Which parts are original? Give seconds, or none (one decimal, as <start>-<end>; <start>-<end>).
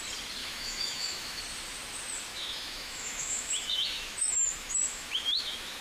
0.0-0.4; 1.4-2.3